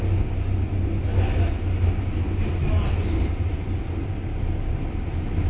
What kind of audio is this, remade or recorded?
recorded